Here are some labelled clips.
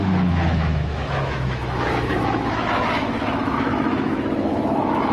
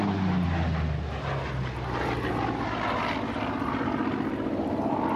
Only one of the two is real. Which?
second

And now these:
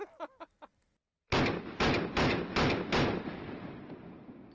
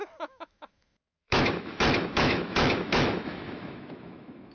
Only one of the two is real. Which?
first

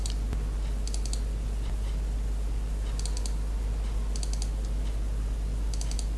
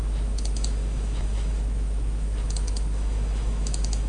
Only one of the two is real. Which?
first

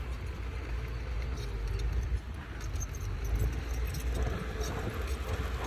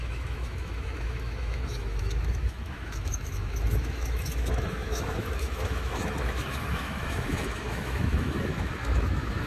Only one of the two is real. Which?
first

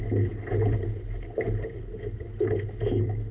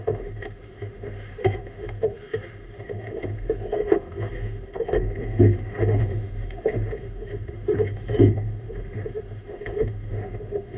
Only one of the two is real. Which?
first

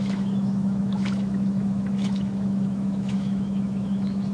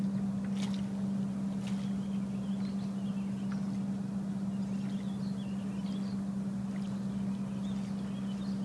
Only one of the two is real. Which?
second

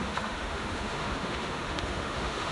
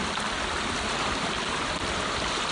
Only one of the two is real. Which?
second